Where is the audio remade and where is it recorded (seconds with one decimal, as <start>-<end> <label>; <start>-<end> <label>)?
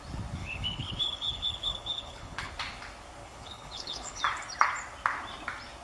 0.0-0.4 recorded; 0.4-2.5 remade; 2.5-3.2 recorded; 3.2-4.2 remade; 4.2-5.8 recorded